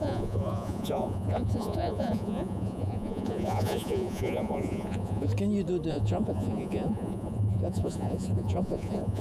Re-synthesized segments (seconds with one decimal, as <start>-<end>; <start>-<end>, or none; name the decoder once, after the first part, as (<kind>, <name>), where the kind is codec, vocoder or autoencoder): 0.0-5.3 (vocoder, Vocos); 5.9-9.2